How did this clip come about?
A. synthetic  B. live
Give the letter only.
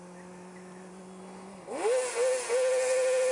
B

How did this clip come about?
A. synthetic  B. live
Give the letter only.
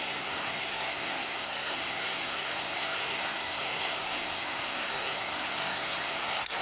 A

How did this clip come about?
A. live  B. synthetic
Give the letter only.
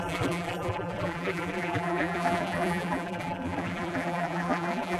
B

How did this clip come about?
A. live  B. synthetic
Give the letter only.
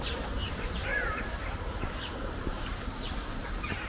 B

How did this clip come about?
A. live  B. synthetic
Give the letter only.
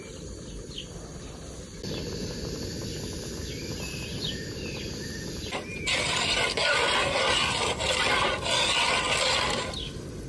A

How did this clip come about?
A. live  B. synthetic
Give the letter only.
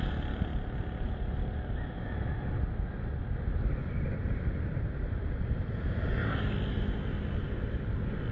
A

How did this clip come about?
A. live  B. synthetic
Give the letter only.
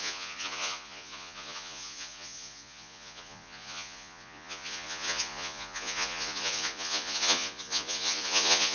B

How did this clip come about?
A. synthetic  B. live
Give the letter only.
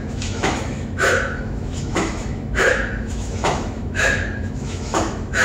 A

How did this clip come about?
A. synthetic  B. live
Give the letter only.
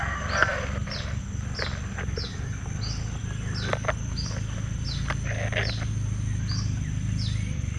B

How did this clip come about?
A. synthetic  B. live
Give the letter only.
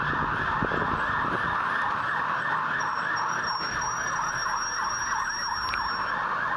B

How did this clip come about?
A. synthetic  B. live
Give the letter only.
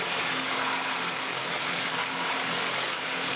A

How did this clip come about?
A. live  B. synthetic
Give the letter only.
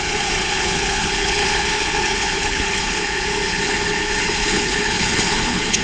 B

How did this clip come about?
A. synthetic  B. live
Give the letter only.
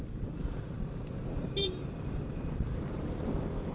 B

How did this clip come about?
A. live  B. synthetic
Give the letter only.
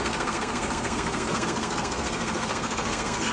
B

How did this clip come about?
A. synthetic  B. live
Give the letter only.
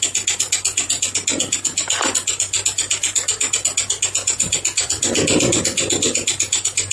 B